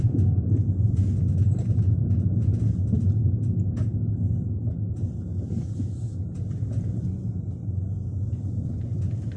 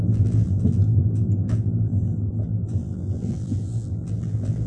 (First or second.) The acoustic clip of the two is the first